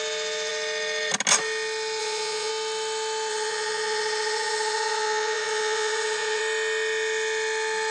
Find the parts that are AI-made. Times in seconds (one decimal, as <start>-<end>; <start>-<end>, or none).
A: 2.0-2.5; 3.3-6.4